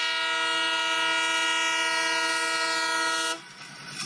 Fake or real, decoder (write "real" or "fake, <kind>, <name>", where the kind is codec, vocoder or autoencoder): real